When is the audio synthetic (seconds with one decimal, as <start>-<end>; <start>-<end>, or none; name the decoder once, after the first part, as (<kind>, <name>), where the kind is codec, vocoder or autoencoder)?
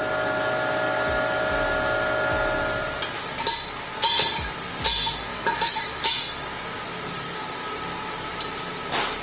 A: 5.3-6.1 (autoencoder, DAC-VAE)